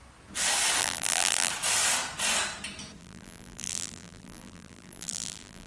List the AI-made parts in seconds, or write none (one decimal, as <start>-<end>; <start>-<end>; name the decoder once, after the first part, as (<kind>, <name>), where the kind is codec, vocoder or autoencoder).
0.8-1.5 (vocoder, BigVGAN v2); 3.0-5.7